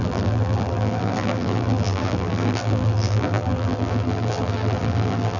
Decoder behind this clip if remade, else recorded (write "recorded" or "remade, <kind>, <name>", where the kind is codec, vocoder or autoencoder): remade, vocoder, BigVGAN v2